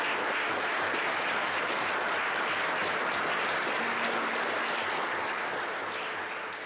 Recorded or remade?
recorded